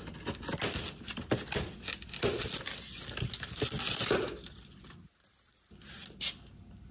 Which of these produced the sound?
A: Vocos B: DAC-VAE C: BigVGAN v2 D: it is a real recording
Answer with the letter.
D